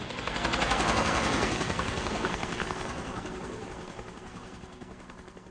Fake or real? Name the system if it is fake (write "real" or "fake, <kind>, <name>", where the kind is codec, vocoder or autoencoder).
fake, codec, SNAC